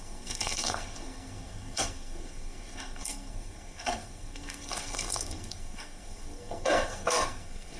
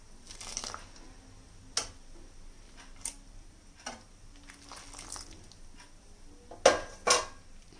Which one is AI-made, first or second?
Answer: first